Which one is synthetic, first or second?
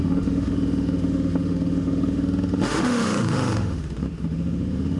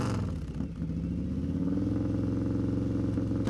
first